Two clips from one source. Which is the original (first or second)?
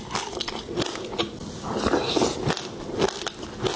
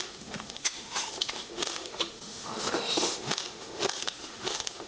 first